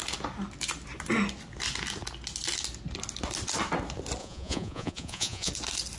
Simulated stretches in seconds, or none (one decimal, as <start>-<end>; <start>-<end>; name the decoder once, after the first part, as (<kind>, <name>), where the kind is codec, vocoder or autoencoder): 4.2-5.5 (vocoder, Vocos)